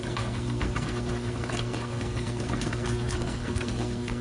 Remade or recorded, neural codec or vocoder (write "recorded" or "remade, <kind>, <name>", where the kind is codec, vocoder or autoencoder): remade, codec, SNAC